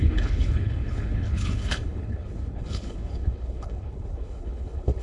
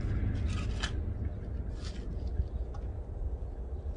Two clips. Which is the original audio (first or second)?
second